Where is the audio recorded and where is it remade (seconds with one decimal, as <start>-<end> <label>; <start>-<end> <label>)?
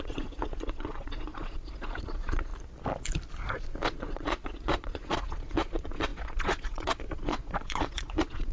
0.0-2.5 remade; 2.5-3.5 recorded; 3.5-8.5 remade